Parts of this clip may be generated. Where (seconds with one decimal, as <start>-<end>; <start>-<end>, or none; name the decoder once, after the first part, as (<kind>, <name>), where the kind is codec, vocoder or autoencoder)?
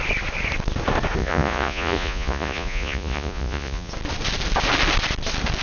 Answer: 1.2-3.9 (vocoder, Vocos)